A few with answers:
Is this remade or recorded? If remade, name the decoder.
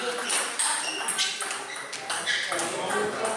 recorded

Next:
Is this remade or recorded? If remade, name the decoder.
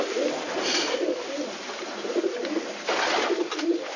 recorded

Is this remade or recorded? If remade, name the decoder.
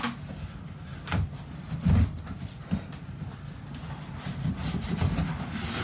recorded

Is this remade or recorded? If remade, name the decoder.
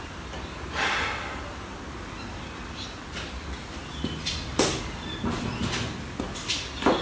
recorded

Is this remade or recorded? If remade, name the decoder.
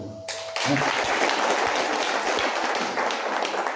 recorded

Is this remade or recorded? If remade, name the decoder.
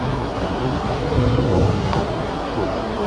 remade, codec, SNAC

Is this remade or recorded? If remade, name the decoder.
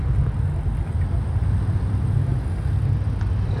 recorded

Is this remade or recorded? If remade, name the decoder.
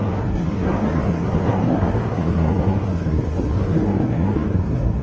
remade, codec, SNAC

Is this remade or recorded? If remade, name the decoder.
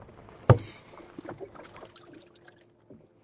recorded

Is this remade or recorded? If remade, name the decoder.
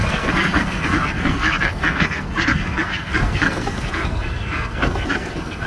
remade, codec, SNAC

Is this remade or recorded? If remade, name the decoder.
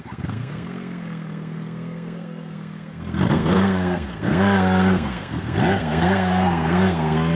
remade, codec, SNAC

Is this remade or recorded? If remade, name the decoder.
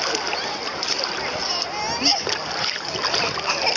recorded